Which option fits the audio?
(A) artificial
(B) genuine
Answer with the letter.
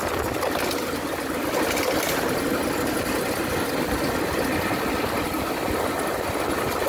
B